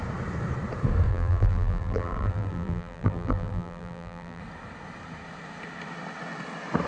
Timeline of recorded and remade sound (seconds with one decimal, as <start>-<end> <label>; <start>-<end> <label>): 0.0-1.1 recorded; 1.1-4.4 remade; 4.4-6.9 recorded